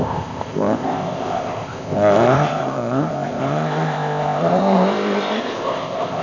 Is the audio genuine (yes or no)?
no